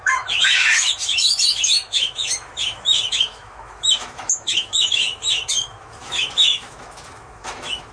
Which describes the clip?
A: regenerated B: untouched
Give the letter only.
A